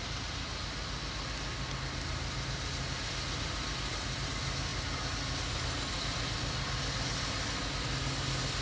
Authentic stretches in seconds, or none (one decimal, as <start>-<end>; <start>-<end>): 0.0-8.6